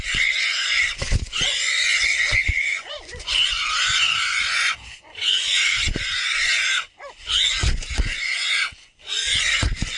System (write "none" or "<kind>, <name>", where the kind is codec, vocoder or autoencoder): vocoder, Vocos